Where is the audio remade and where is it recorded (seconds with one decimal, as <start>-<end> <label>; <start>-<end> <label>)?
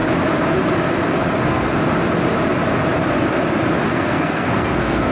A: 0.0-3.9 recorded; 3.9-5.1 remade